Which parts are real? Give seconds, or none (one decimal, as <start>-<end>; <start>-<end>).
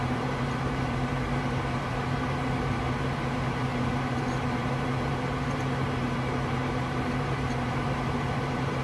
none